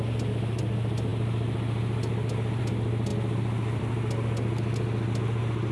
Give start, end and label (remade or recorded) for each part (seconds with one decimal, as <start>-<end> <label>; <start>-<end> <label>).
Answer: 0.0-5.7 recorded